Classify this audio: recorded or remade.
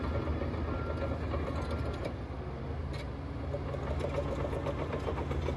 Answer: recorded